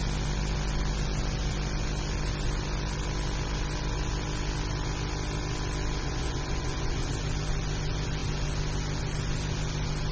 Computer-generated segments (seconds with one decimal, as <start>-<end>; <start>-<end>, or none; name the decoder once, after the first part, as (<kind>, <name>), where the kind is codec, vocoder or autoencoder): 6.0-7.1 (vocoder, Vocos)